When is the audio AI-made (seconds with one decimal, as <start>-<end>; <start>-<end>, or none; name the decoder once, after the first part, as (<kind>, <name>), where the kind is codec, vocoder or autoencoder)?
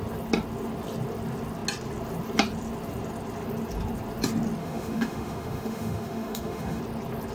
4.6-6.8 (autoencoder, DAC-VAE)